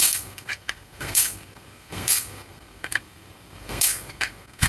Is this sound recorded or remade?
remade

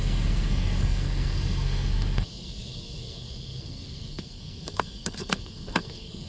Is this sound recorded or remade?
remade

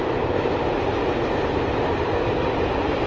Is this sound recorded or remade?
recorded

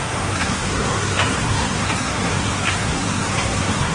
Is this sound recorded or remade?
remade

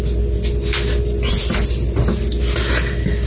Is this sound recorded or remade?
recorded